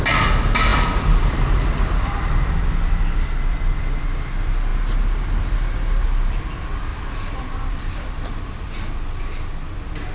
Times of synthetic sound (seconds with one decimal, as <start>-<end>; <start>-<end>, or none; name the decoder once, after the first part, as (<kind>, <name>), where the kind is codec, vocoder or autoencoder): 0.7-4.0 (vocoder, BigVGAN v2); 6.9-8.9